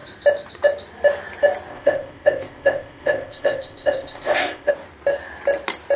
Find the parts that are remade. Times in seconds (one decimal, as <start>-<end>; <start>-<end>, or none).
1.7-4.7